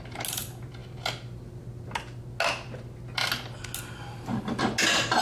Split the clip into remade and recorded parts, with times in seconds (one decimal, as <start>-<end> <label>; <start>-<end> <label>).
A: 0.0-5.2 recorded